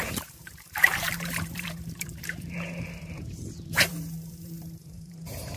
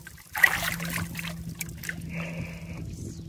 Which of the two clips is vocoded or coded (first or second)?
first